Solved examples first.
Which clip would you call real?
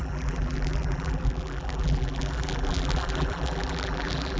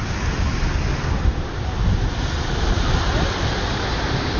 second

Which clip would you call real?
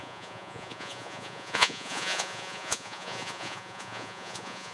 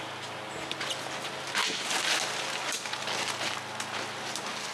second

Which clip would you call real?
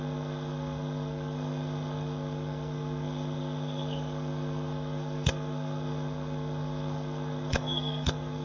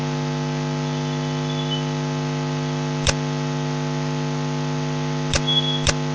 second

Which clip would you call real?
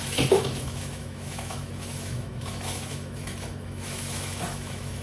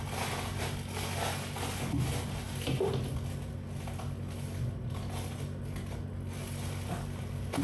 second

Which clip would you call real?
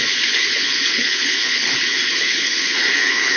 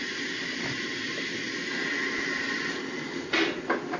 second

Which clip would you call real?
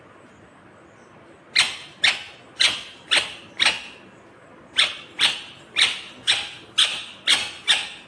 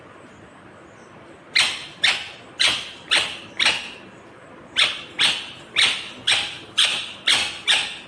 first